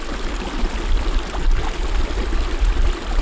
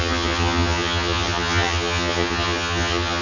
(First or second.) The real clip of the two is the first